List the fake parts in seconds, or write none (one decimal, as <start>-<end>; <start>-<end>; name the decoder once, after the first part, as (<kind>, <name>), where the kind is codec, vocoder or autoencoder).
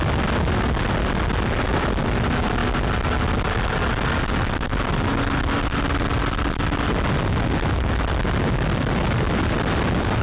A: none